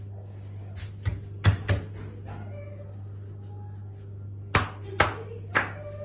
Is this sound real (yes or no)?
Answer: yes